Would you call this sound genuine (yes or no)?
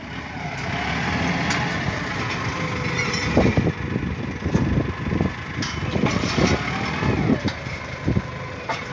yes